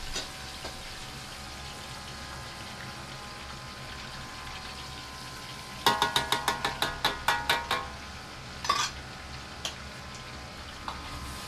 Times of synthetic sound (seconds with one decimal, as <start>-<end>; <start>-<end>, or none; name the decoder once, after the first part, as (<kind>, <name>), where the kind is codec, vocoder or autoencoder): none